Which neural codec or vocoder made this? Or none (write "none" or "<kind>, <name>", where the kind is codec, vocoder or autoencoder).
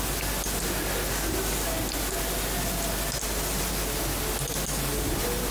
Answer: none